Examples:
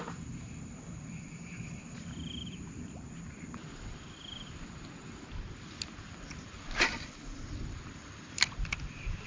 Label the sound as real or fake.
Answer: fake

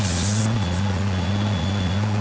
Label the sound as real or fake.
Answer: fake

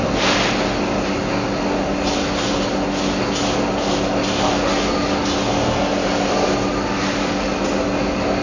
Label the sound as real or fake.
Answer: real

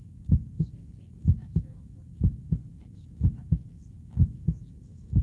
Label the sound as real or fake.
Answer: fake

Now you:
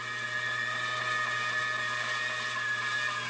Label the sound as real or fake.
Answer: real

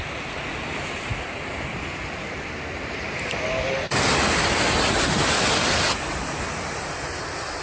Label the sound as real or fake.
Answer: real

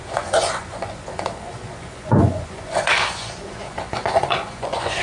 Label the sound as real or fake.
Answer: fake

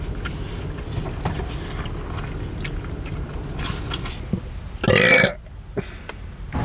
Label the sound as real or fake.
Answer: real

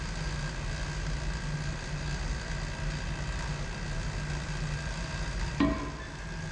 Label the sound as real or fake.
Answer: real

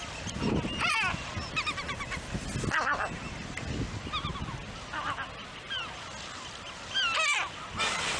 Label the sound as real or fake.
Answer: real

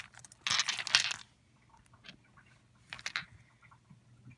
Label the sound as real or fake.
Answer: real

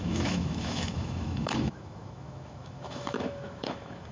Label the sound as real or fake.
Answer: fake